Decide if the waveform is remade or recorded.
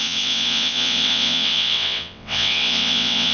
remade